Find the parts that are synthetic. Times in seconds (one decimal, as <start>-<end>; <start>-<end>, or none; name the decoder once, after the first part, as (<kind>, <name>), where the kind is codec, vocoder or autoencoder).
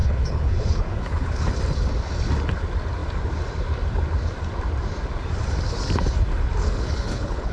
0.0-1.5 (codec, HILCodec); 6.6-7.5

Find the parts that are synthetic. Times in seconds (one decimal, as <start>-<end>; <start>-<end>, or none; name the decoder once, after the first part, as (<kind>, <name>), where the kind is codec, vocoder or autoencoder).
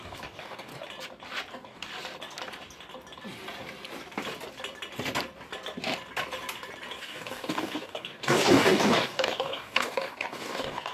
0.0-0.7 (codec, DAC); 1.5-1.9; 7.0-10.9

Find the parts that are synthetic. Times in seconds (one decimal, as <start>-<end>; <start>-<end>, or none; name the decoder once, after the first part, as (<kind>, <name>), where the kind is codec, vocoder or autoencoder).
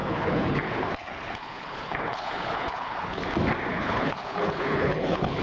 0.0-3.2 (codec, HILCodec); 3.7-5.4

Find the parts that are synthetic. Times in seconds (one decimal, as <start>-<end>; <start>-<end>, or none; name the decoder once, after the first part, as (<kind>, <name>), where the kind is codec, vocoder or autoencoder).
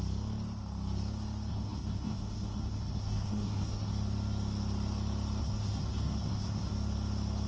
1.5-3.9 (codec, SNAC); 5.4-6.7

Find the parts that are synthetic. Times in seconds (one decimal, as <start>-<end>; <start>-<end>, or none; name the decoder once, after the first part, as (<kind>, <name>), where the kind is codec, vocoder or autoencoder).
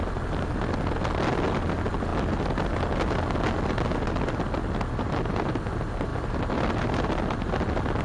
none